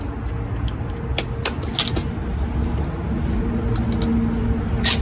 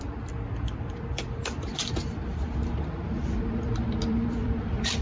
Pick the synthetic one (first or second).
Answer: second